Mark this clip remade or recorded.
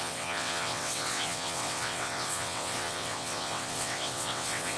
remade